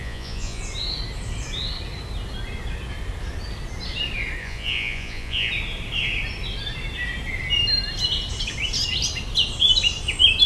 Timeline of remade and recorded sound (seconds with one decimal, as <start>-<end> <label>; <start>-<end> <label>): 0.0-0.6 remade; 0.6-4.4 recorded; 4.4-5.5 remade; 5.5-10.5 recorded